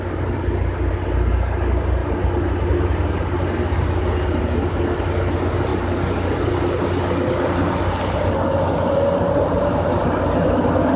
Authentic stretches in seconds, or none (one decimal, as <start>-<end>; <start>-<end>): 0.0-11.0

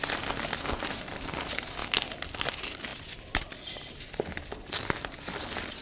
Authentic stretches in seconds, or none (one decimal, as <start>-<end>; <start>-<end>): 1.8-2.5; 2.9-5.1

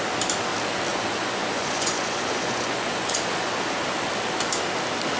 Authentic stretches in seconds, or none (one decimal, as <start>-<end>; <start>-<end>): 0.0-0.9; 3.5-5.2

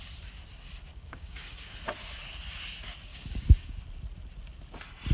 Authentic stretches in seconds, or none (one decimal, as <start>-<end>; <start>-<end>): 0.0-0.9; 1.8-3.1; 3.8-5.1

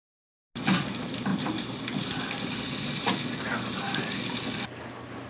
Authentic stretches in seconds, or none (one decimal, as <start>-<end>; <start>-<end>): 0.0-1.3; 1.8-5.3

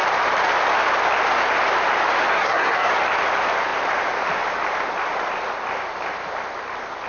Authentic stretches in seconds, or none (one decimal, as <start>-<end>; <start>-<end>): 0.0-2.3; 2.9-7.1